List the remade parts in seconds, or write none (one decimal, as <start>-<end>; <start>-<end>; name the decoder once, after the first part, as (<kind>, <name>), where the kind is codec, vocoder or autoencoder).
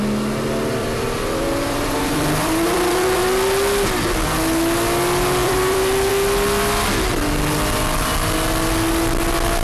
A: 0.8-3.2 (vocoder, BigVGAN v2); 5.4-6.1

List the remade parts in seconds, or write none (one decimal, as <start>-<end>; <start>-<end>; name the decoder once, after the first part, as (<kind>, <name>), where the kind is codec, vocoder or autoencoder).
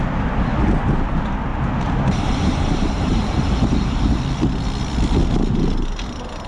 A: 1.5-4.2 (vocoder, BigVGAN v2)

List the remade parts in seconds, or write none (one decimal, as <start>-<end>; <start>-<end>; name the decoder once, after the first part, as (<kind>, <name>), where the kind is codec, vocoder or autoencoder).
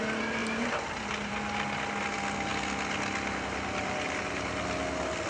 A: 0.4-1.3 (vocoder, BigVGAN v2)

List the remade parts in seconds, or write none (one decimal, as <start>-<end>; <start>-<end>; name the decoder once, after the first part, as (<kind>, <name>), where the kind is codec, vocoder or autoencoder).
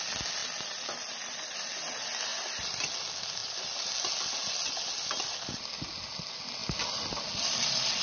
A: 0.4-1.5 (vocoder, BigVGAN v2); 2.3-3.0; 3.4-4.1; 6.6-8.0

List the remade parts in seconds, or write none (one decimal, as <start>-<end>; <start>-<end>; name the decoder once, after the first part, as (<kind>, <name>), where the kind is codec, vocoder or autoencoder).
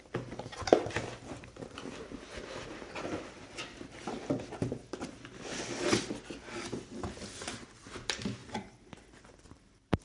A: 8.4-10.0 (vocoder, BigVGAN v2)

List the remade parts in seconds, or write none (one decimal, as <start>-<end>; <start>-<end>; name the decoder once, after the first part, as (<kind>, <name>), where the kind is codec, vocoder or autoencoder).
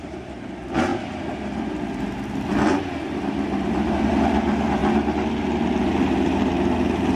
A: none